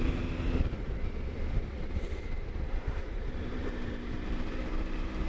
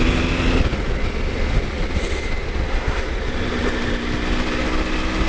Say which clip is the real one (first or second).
second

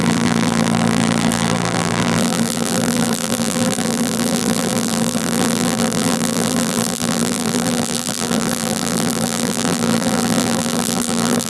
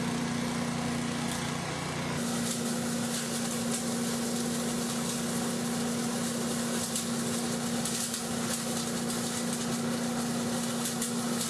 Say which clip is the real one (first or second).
second